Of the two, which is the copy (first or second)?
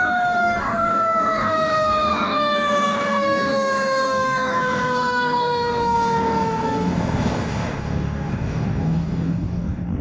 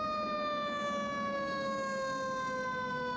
first